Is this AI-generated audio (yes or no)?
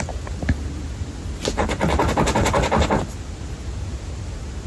no